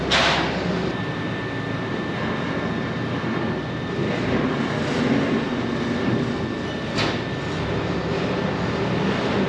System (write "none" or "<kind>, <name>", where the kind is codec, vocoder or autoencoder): none